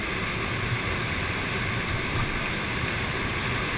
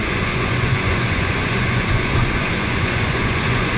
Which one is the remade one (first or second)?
second